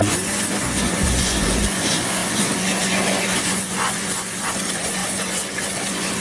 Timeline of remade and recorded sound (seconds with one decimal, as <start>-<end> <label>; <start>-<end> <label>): 0.0-6.2 remade